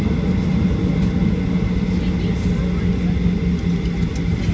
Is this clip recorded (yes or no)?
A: yes